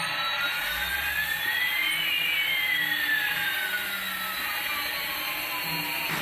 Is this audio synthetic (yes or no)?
no